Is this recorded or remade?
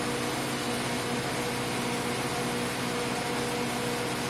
recorded